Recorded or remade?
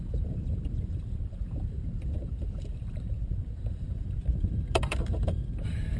remade